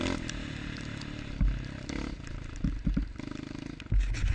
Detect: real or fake real